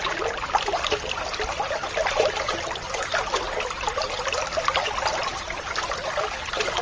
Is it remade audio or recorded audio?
recorded